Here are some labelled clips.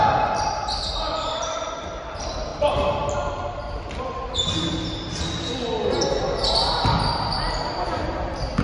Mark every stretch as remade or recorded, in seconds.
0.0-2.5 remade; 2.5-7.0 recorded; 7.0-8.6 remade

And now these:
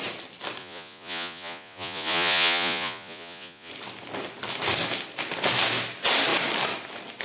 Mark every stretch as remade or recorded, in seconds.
0.0-0.6 recorded; 0.6-3.7 remade; 3.7-7.2 recorded